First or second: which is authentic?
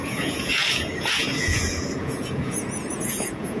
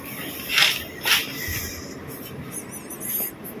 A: second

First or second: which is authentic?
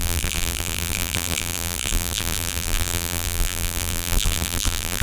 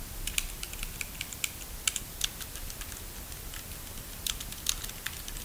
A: second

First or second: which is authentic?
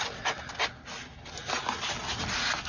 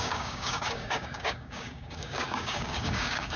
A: first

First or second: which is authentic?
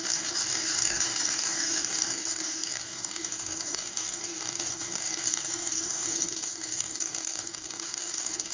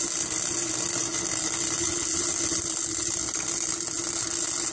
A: second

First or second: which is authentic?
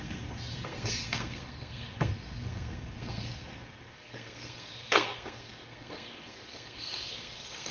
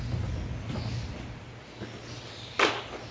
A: second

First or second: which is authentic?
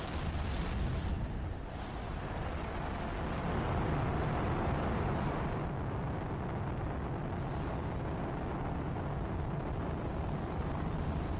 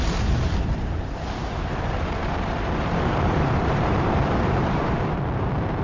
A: first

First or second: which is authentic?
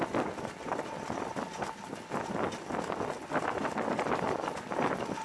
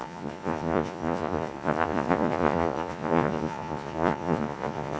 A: first